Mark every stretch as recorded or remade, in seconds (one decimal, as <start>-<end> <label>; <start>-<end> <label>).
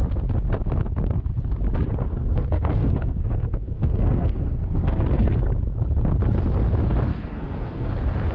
0.0-2.0 recorded; 2.0-5.3 remade; 5.3-7.1 recorded; 7.1-7.9 remade; 7.9-8.3 recorded